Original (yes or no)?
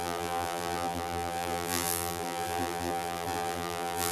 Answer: no